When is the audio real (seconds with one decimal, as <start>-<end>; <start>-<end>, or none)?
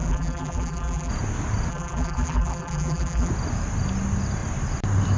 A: 1.1-1.7; 3.3-5.2